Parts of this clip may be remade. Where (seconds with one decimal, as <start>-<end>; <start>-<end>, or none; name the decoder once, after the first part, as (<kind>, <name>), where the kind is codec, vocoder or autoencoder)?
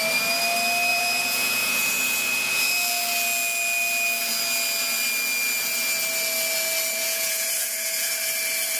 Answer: 0.9-2.7 (vocoder, Vocos); 6.9-8.1